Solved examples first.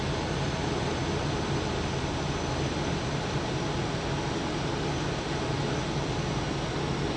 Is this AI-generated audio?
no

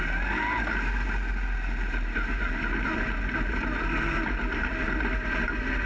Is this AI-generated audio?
no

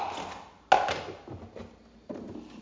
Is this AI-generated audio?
no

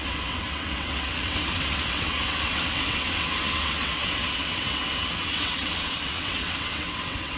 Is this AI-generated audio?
yes